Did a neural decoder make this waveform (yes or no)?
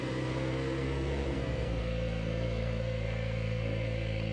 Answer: yes